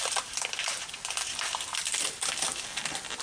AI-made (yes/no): no